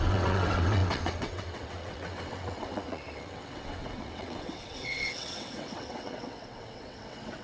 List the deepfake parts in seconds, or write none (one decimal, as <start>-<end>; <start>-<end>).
0.0-7.4